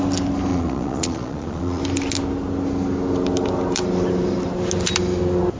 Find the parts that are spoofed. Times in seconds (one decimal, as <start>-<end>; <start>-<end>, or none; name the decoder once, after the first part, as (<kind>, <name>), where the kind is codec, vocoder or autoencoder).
0.5-1.8 (vocoder, Vocos)